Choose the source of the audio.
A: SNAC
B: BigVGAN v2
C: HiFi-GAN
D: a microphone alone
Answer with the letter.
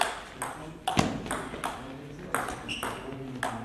D